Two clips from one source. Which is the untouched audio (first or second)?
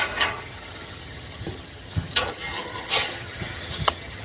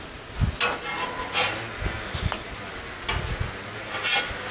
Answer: second